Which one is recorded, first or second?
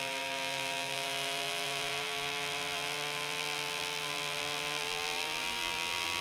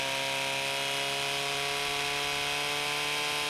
second